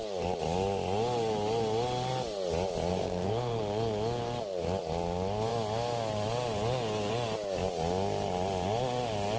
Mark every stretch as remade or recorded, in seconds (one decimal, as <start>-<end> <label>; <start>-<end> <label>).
0.0-2.9 recorded; 2.9-3.6 remade; 3.6-9.4 recorded